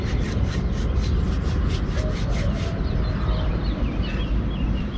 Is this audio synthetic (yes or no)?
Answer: no